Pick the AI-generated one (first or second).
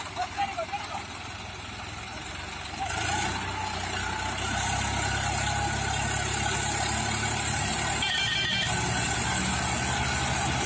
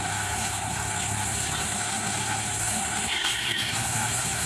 second